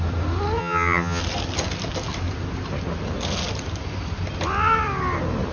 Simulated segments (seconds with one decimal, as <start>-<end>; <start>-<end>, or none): 0.6-1.2